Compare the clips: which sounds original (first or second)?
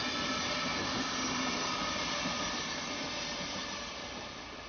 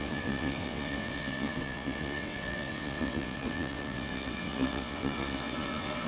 first